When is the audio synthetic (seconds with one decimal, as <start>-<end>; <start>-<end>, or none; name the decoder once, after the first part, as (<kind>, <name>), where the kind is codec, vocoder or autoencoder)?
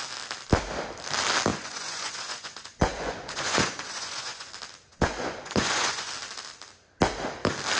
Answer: 1.5-4.5 (vocoder, Vocos); 4.9-6.1